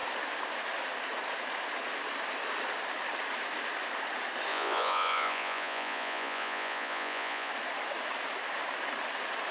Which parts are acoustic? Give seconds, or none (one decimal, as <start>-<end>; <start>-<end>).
0.0-4.5; 7.5-9.5